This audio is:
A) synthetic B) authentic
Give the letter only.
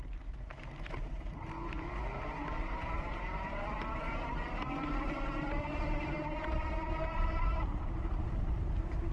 A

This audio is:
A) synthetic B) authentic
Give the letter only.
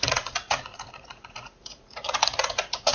A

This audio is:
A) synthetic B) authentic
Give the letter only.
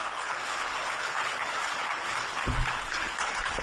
A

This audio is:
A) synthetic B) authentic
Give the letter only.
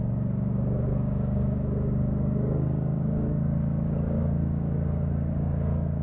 A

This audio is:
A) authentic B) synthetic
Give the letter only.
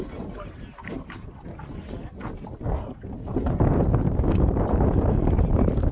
B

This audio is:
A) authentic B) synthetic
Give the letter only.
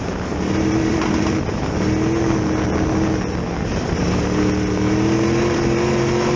A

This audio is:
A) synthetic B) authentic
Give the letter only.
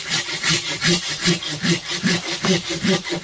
B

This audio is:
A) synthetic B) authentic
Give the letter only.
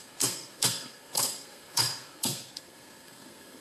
A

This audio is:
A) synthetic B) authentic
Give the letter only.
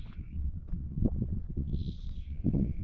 A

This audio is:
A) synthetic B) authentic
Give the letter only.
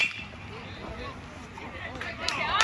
B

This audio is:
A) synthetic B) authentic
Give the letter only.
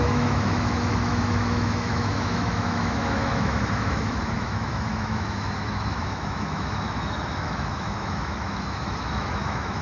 A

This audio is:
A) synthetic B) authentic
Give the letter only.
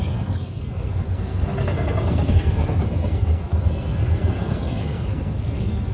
A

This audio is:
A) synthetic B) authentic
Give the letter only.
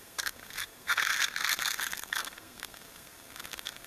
A